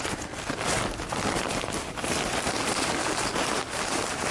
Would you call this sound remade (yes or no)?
no